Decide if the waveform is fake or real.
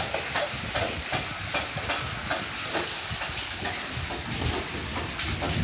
real